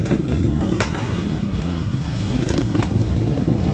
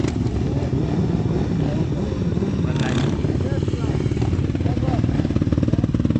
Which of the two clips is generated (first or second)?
first